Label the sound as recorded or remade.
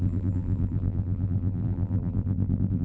remade